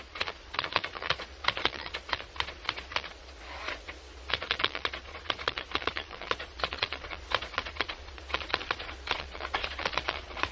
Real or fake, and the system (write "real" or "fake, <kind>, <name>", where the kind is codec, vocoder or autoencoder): fake, vocoder, Vocos